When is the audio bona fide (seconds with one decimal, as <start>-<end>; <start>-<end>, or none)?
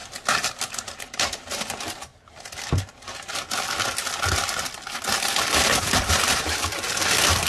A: 2.1-6.3; 6.7-7.5